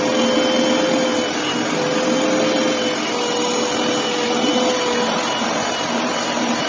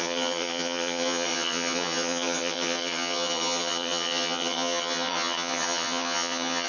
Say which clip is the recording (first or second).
first